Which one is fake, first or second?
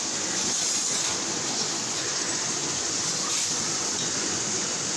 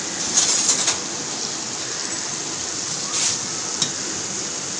first